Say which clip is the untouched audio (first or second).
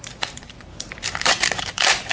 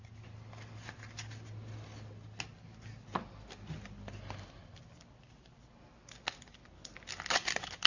second